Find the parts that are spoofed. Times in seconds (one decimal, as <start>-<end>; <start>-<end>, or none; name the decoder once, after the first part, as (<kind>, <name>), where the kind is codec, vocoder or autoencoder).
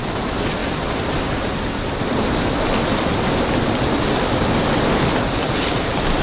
none